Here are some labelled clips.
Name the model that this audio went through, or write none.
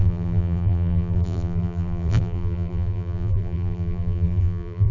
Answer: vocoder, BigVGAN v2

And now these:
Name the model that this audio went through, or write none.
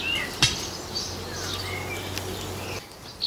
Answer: none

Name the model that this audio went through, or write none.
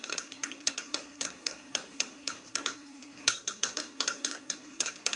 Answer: codec, SNAC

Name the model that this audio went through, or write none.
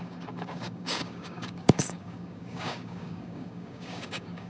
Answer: codec, DAC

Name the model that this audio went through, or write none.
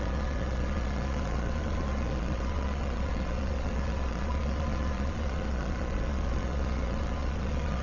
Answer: vocoder, Vocos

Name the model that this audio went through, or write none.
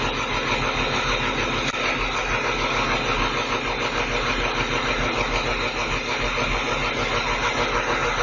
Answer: none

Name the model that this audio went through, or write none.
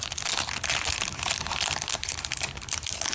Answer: none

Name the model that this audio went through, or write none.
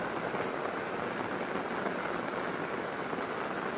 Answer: none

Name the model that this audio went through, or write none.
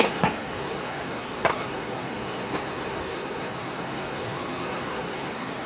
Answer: codec, SNAC